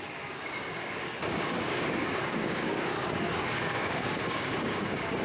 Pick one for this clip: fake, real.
fake